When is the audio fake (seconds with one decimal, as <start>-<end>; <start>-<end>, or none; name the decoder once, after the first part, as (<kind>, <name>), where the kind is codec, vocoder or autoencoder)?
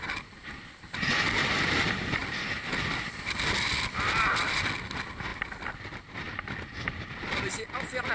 none